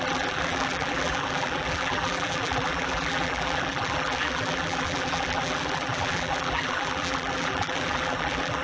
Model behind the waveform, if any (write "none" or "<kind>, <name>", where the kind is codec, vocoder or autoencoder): vocoder, BigVGAN v2